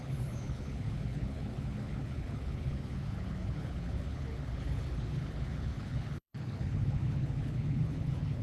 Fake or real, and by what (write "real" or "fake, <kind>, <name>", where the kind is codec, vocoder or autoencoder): fake, codec, HILCodec